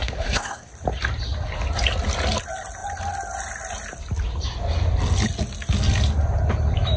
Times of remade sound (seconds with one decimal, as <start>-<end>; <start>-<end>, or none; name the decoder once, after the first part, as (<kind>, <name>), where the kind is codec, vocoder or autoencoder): 0.0-0.7 (codec, SNAC)